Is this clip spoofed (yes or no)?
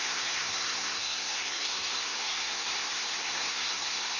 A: yes